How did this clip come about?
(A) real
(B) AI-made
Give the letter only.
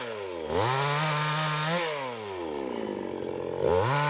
A